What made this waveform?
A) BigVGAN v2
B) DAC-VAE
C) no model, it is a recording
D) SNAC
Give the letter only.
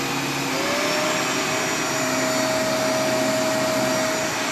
C